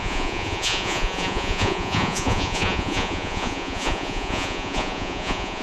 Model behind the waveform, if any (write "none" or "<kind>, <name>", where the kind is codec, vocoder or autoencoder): vocoder, Vocos